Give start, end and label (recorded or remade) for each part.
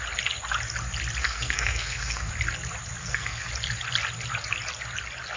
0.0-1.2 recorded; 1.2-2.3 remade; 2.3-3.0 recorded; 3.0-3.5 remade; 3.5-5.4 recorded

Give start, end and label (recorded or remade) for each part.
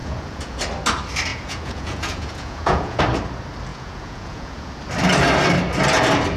0.0-0.6 remade; 0.6-1.3 recorded; 1.3-3.0 remade; 3.0-3.7 recorded; 3.7-4.7 remade; 4.7-6.4 recorded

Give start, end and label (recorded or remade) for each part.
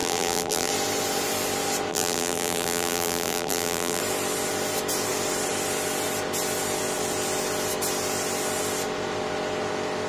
0.0-0.7 remade; 0.7-1.9 recorded; 1.9-4.0 remade; 4.0-10.1 recorded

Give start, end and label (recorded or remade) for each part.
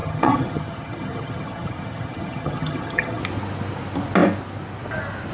0.0-3.2 remade; 3.2-5.3 recorded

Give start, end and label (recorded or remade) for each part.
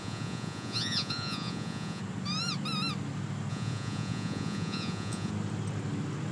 0.0-2.0 remade; 2.0-3.5 recorded; 3.5-5.3 remade; 5.3-6.3 recorded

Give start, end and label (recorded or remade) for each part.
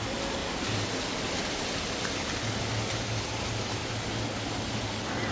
0.0-5.3 recorded